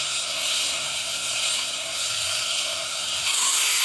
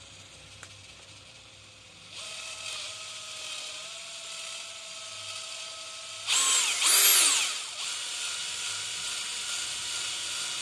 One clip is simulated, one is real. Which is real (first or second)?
second